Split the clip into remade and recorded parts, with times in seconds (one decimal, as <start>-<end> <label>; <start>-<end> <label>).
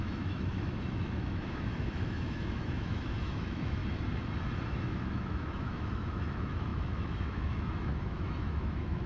0.0-3.8 remade; 3.8-4.7 recorded; 4.7-9.1 remade